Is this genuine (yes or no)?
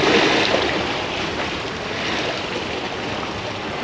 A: no